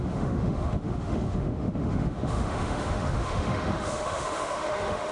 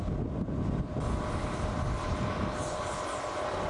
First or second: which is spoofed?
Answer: first